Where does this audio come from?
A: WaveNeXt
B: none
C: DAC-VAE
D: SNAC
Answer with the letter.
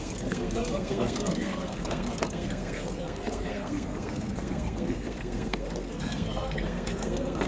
D